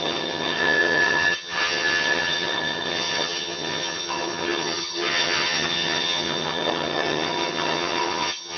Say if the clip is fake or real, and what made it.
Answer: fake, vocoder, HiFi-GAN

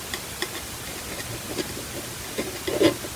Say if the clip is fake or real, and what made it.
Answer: real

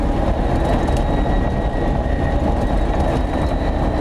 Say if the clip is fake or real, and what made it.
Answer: real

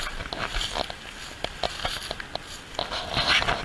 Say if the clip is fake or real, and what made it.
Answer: real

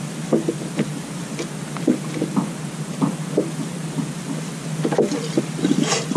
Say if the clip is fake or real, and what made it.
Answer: real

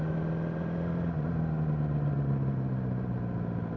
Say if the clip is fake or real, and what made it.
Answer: real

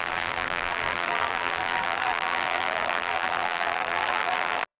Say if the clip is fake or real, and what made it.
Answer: fake, vocoder, BigVGAN v2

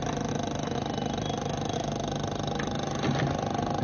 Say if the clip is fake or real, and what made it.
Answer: real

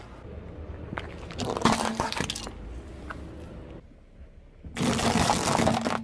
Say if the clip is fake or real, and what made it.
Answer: real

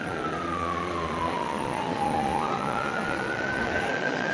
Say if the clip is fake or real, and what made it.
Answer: fake, vocoder, Vocos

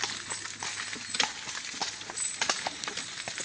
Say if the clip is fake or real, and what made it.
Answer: real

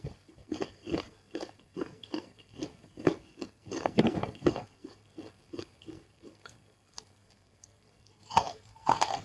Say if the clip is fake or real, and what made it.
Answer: fake, codec, SNAC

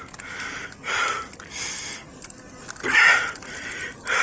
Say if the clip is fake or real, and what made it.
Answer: real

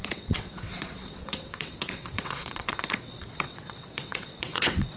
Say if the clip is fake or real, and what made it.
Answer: fake, vocoder, WaveNeXt